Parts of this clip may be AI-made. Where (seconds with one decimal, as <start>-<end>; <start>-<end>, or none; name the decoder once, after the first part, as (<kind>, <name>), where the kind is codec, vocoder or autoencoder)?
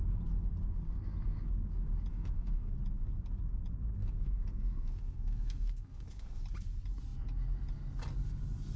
2.1-2.7 (codec, SNAC); 4.0-6.4